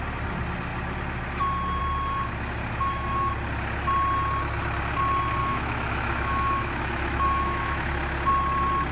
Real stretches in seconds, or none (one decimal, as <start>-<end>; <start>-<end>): 0.0-2.6; 3.3-5.4; 7.9-8.9